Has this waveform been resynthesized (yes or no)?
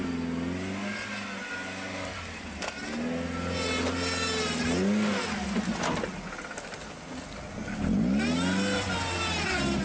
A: no